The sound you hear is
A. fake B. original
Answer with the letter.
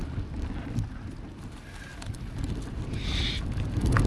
B